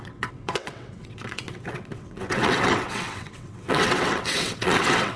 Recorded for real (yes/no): no